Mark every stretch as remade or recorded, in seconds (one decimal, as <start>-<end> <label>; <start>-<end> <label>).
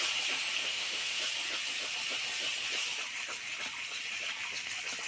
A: 0.0-0.6 recorded; 0.6-1.2 remade; 1.2-5.1 recorded